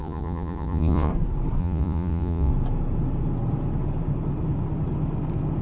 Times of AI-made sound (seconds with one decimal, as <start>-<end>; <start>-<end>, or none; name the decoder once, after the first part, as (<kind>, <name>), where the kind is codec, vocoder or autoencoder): 0.0-1.1 (vocoder, Vocos); 1.6-2.5